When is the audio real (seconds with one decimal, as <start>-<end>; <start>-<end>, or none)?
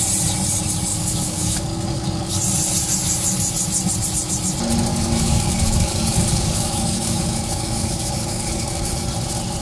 0.0-0.9; 2.3-4.9; 8.9-9.6